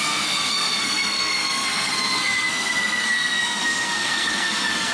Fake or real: fake